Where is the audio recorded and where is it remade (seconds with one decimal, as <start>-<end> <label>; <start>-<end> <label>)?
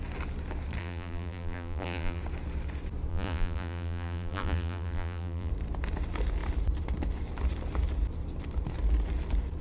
0.0-0.8 recorded; 0.8-2.2 remade; 2.2-3.1 recorded; 3.1-5.5 remade; 5.5-9.6 recorded